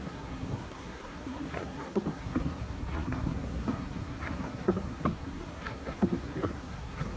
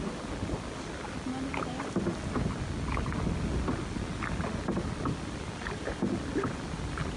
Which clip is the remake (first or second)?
first